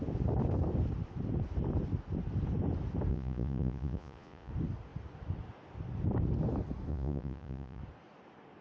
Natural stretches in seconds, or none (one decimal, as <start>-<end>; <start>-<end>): 0.0-3.1; 4.5-6.9; 7.8-8.6